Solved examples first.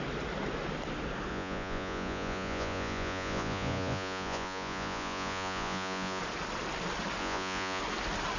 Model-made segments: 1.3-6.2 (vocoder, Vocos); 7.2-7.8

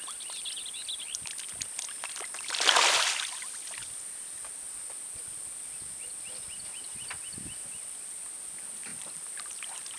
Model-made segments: 8.9-9.6 (vocoder, BigVGAN v2)

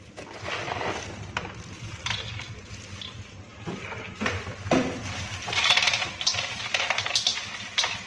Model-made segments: none

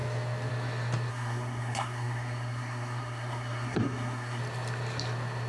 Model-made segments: 1.1-4.4 (codec, SNAC)